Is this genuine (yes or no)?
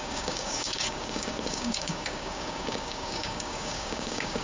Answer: no